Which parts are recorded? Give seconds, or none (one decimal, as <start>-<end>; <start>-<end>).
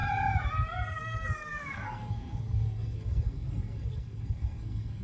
0.0-1.0